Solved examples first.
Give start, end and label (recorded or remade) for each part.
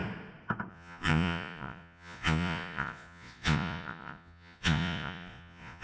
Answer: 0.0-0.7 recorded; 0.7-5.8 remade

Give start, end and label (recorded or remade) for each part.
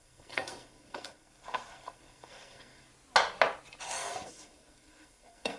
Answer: 0.0-2.9 remade; 2.9-3.8 recorded; 3.8-5.6 remade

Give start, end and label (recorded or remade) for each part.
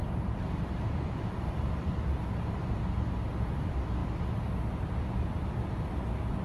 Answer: 0.0-6.4 recorded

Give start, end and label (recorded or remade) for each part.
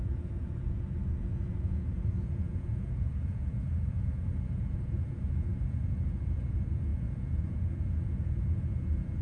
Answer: 0.0-9.2 remade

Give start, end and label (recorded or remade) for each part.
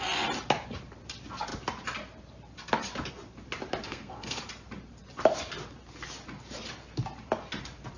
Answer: 0.0-3.8 recorded; 3.8-4.4 remade; 4.4-8.0 recorded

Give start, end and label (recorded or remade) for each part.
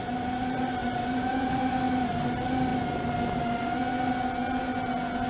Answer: 0.0-0.8 recorded; 0.8-1.7 remade; 1.7-5.3 recorded